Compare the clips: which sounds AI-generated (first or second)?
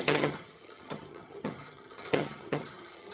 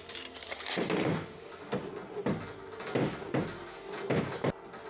first